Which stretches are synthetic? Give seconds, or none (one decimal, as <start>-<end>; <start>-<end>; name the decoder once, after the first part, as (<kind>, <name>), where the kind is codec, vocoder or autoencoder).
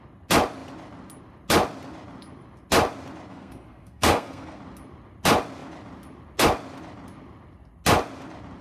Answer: 3.3-4.6 (codec, SNAC)